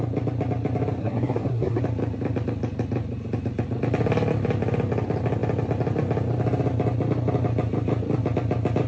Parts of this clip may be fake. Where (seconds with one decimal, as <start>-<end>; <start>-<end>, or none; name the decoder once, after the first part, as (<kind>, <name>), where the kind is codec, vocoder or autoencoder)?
1.0-1.8 (codec, SNAC)